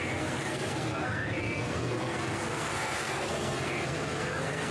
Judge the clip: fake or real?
fake